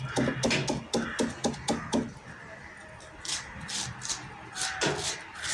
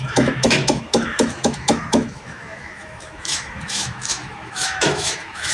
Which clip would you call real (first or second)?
first